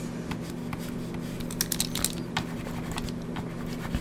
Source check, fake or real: real